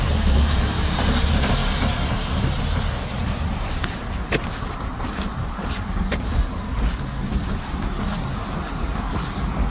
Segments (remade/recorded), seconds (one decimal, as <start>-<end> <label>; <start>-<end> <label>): 0.0-1.6 remade; 1.6-2.6 recorded; 2.6-6.3 remade; 6.3-9.1 recorded; 9.1-9.7 remade